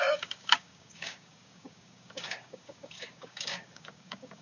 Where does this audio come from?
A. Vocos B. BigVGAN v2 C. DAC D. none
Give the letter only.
C